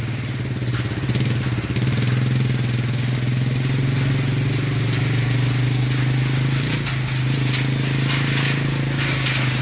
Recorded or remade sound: recorded